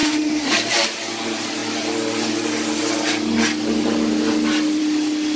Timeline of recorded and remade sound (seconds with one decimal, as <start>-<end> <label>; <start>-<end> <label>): 0.0-0.5 remade; 0.5-5.4 recorded